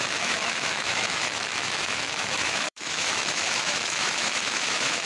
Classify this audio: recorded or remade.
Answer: remade